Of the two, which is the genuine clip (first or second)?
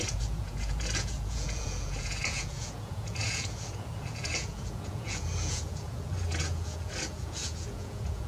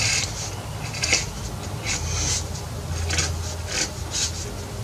second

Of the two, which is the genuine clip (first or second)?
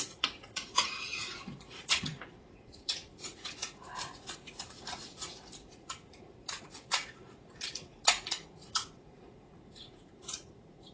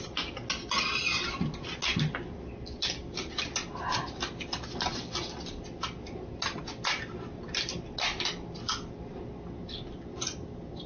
second